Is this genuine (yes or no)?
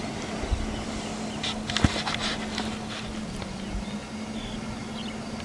yes